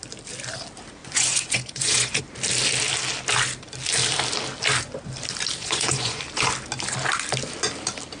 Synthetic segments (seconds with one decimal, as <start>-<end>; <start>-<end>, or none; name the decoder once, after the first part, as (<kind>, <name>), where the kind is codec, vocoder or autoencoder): 1.0-2.2 (vocoder, Vocos); 5.6-6.2

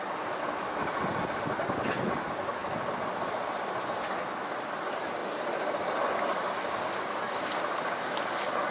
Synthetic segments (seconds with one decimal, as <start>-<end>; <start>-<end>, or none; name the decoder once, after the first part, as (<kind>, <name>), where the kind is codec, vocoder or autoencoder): none

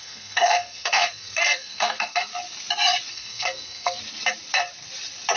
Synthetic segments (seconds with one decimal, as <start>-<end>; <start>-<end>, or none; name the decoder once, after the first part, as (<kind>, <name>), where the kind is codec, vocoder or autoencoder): 0.0-2.3 (codec, SNAC); 3.1-4.0

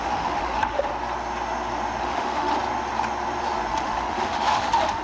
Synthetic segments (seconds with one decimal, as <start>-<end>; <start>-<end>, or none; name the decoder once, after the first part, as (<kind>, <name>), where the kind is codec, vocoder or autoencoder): 0.0-0.9 (autoencoder, DAC-VAE); 2.0-2.5; 3.7-5.0

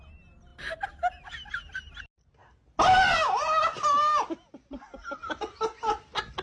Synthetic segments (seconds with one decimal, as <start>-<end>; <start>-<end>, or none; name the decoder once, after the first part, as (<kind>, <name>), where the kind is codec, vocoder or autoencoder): none

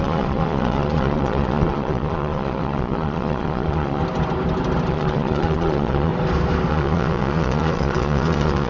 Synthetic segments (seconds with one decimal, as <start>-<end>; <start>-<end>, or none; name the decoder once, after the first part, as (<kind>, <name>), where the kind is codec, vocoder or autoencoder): 0.0-4.0 (vocoder, Vocos); 4.9-6.1; 6.7-8.7

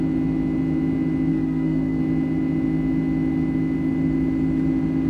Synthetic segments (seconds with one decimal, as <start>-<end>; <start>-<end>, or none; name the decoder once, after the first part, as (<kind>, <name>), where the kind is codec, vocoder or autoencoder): 1.3-2.0 (codec, SNAC)